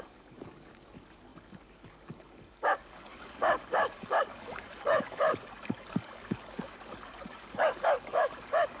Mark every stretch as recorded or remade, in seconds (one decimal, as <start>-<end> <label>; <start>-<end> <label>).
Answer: 0.0-8.8 remade